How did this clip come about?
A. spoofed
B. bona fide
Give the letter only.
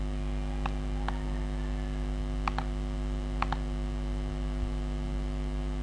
B